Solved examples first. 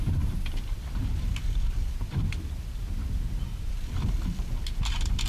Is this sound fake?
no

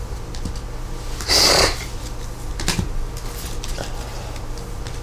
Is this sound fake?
no